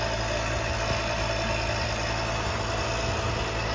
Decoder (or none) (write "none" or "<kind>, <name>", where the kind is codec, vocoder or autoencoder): none